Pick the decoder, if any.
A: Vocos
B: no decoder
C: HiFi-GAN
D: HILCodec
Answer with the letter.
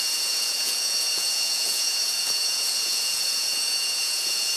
A